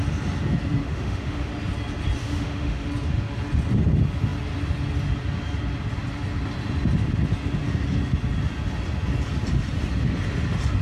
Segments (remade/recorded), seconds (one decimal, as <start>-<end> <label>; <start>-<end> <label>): 0.0-0.8 recorded; 0.8-1.5 remade; 1.5-2.2 recorded; 2.2-2.8 remade; 2.8-10.8 recorded